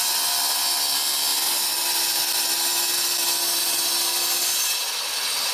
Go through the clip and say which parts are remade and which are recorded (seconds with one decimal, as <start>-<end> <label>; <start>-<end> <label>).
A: 0.0-5.5 recorded